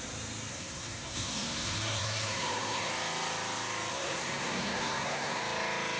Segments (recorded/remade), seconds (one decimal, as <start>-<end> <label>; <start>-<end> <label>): 0.0-0.5 recorded; 0.5-2.9 remade; 2.9-3.9 recorded; 3.9-5.4 remade; 5.4-6.0 recorded

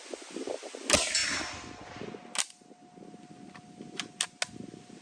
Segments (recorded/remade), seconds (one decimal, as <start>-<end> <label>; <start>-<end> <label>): 0.0-5.0 recorded

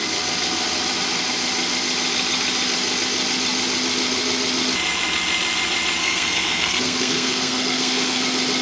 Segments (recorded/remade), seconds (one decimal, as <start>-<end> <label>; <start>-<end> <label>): 0.0-6.0 recorded; 6.0-8.2 remade; 8.2-8.6 recorded

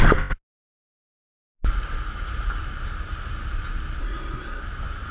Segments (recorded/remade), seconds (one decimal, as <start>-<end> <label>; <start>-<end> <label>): 0.0-4.0 recorded; 4.0-4.6 remade; 4.6-5.1 recorded

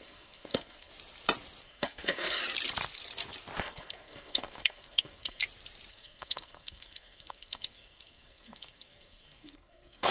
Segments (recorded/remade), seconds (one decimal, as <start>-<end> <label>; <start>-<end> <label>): 0.0-0.9 remade; 0.9-1.6 recorded; 1.6-2.4 remade; 2.4-3.6 recorded; 3.6-5.4 remade; 5.4-5.9 recorded; 5.9-10.1 remade